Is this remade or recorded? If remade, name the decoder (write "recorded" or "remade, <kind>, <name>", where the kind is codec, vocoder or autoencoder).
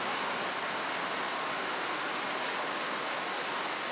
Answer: recorded